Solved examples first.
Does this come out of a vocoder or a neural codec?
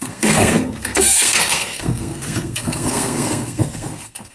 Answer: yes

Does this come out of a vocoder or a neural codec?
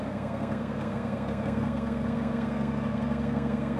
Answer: yes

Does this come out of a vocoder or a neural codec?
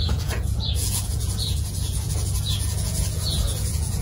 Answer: yes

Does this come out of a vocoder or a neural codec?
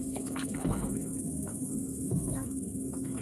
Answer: yes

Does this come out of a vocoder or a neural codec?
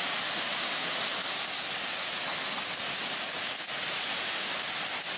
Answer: no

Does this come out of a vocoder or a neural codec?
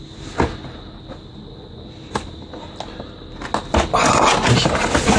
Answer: no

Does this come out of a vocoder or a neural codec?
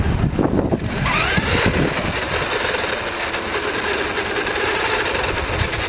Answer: no